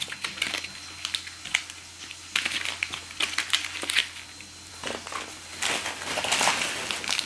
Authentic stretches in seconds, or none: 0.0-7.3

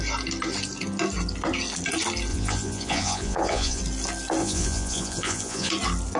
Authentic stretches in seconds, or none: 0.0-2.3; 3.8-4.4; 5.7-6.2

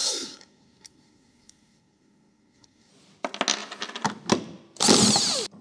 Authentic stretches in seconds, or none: 2.9-5.6